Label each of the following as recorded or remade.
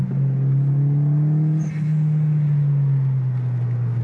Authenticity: recorded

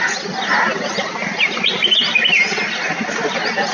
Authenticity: recorded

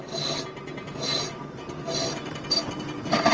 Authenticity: recorded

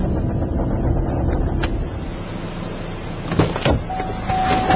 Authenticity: recorded